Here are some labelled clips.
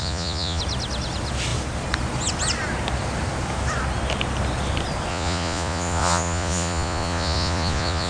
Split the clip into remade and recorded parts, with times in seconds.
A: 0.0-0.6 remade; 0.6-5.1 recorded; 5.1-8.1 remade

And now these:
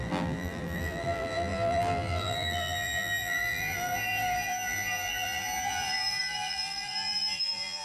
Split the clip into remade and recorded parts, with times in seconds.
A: 0.0-7.8 remade

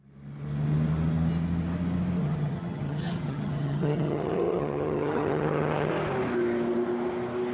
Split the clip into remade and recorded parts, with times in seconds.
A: 0.0-2.2 recorded; 2.2-5.9 remade; 5.9-7.5 recorded

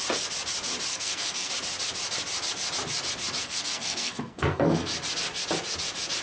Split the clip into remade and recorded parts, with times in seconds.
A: 0.0-0.9 recorded; 0.9-1.5 remade; 1.5-3.4 recorded; 3.4-4.9 remade; 4.9-6.2 recorded

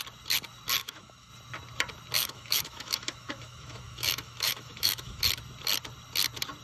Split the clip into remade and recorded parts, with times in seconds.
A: 0.0-0.8 recorded; 0.8-1.3 remade; 1.3-2.2 recorded; 2.2-5.2 remade; 5.2-6.6 recorded

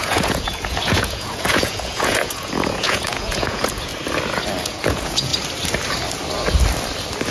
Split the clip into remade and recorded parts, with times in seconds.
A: 0.0-3.9 remade; 3.9-4.6 recorded; 4.6-5.3 remade; 5.3-7.3 recorded

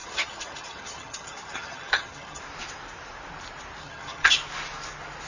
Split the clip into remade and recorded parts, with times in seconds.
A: 0.0-2.4 remade; 2.4-3.8 recorded; 3.8-4.3 remade; 4.3-5.3 recorded

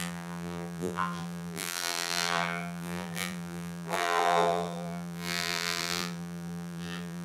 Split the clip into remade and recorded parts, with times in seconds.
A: 0.0-7.2 remade